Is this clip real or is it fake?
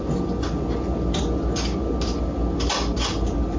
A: real